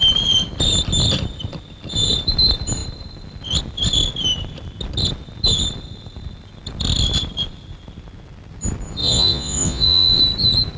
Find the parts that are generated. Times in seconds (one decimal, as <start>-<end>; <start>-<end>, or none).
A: 9.0-10.2